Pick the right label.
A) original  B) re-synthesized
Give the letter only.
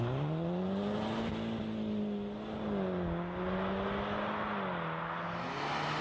A